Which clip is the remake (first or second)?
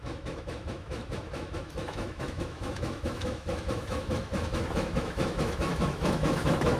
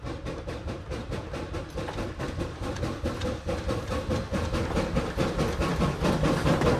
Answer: first